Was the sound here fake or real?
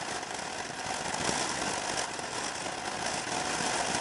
real